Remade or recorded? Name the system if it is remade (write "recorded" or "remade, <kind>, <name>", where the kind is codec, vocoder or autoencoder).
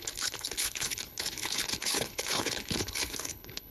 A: remade, codec, HILCodec